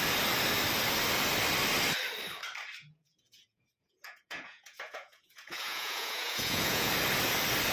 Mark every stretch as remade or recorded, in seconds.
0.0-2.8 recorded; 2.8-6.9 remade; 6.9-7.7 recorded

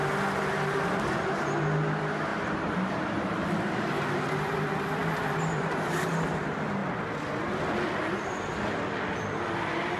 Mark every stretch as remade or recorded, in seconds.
0.0-2.3 recorded; 2.3-3.4 remade; 3.4-10.0 recorded

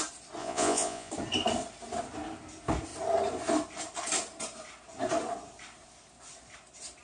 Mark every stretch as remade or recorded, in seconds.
0.0-0.4 recorded; 0.4-1.1 remade; 1.1-7.0 recorded